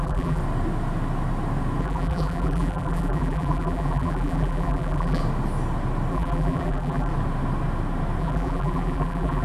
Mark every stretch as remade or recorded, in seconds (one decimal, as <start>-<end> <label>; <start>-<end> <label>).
0.0-0.4 remade; 0.4-1.8 recorded; 1.8-5.2 remade; 5.2-6.1 recorded; 6.1-7.1 remade; 7.1-8.2 recorded; 8.2-9.4 remade